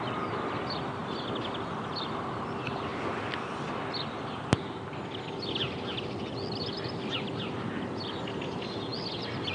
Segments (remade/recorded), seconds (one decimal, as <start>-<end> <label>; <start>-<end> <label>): 0.0-9.5 recorded